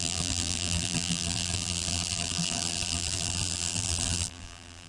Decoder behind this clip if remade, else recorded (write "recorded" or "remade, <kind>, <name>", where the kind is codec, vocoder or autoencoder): remade, vocoder, BigVGAN v2